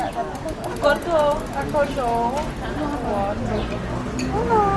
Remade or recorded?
recorded